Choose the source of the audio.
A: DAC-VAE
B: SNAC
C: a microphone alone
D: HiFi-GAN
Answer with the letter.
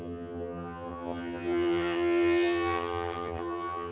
D